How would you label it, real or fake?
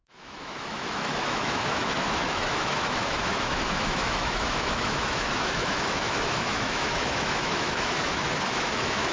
fake